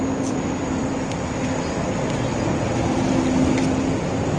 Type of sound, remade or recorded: recorded